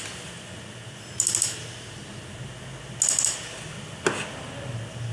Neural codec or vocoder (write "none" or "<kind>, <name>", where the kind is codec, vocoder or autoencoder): none